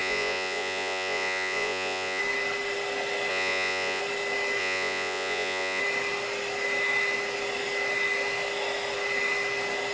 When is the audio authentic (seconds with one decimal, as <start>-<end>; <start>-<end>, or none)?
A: 2.2-3.3; 4.0-4.6; 5.8-9.9